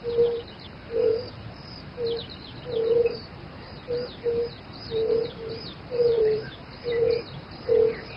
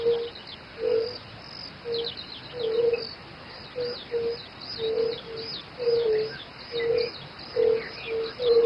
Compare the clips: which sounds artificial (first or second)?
first